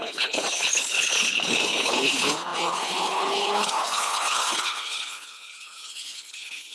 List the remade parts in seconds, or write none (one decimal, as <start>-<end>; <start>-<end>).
0.0-6.7